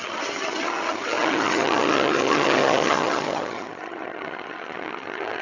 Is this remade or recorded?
remade